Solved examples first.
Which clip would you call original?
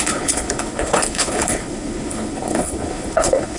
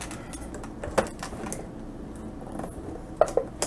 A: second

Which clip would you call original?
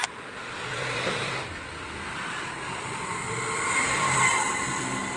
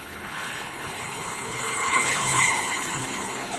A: first